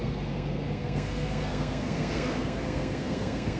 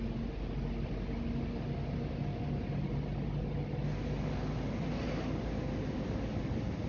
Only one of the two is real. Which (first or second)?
second